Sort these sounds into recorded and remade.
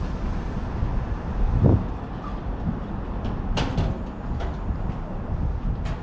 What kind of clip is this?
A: recorded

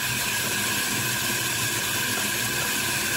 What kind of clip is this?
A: recorded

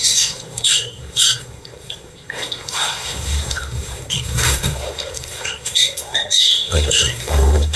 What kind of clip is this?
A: remade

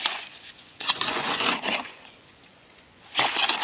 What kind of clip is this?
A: remade